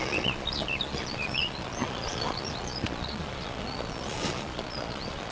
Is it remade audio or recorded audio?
remade